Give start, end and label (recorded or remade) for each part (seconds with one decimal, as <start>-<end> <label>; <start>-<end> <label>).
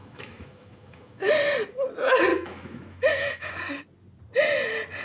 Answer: 0.0-1.3 remade; 1.3-2.3 recorded; 2.3-3.5 remade; 3.5-5.0 recorded